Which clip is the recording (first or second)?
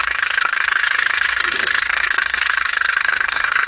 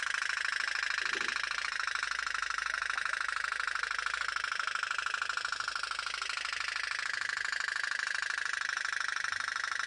second